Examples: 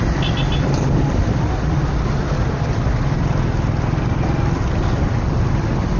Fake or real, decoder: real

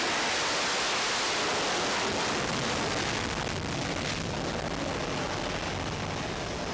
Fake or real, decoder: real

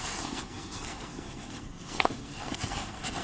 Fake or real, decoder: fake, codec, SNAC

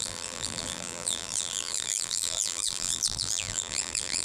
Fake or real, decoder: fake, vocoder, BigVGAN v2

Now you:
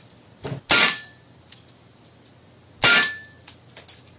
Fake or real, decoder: real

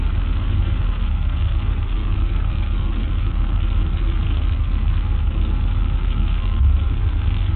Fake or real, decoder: fake, codec, SNAC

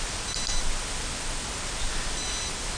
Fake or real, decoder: real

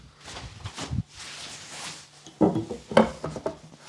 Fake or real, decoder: real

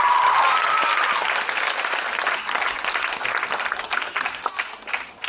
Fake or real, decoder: real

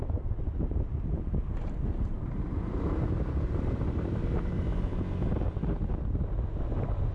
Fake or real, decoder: fake, vocoder, BigVGAN v2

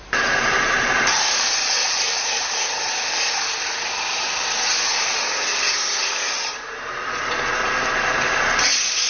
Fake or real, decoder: fake, vocoder, BigVGAN v2